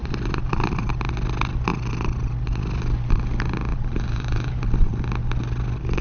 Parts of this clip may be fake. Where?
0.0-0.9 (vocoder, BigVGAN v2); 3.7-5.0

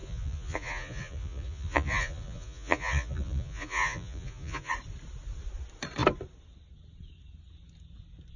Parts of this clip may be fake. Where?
0.0-4.7 (vocoder, Vocos)

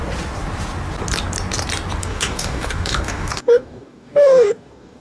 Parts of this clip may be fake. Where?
2.0-5.0 (codec, DAC)

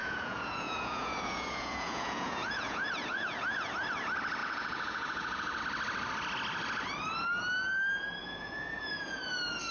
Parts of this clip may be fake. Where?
0.0-3.7 (vocoder, Vocos); 4.4-5.6; 8.2-9.2

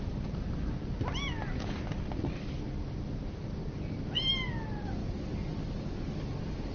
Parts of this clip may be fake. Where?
none

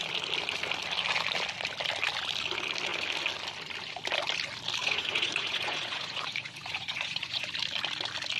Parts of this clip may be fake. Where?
4.8-7.5 (vocoder, Vocos)

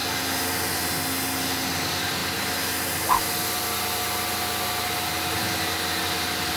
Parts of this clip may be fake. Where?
none

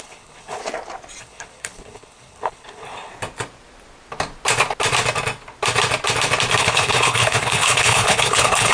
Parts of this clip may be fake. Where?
0.0-0.6 (codec, HILCodec); 1.2-3.1; 6.6-8.7